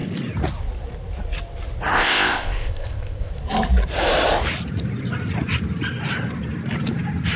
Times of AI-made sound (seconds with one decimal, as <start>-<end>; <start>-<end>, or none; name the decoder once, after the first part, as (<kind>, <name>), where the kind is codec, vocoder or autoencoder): 1.9-3.3 (codec, ZipCodec)